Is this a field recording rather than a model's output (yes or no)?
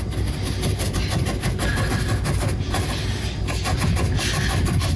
yes